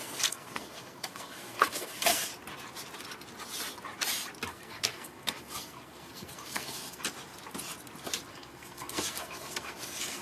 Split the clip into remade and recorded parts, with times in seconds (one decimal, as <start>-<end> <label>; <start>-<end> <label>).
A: 0.0-2.3 remade; 2.3-4.5 recorded; 4.5-7.0 remade; 7.0-8.3 recorded; 8.3-10.2 remade